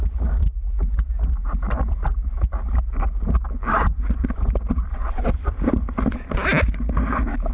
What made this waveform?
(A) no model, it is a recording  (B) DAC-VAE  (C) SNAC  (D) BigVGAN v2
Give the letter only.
A